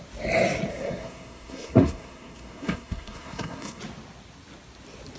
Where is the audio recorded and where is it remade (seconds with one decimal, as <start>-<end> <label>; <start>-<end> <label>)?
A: 0.0-0.7 recorded; 0.7-3.8 remade; 3.8-5.2 recorded